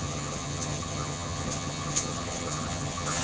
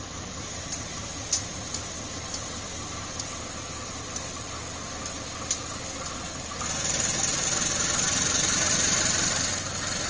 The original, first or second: second